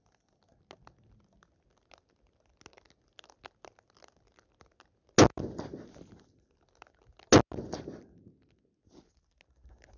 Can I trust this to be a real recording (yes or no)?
yes